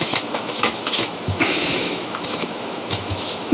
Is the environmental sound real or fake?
fake